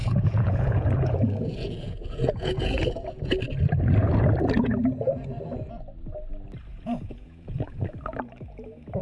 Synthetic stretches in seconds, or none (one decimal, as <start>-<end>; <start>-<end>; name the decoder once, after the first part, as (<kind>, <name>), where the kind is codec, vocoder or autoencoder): 0.0-3.4 (vocoder, Vocos); 6.7-7.9